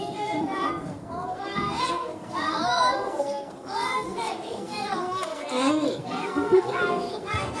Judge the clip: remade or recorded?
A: remade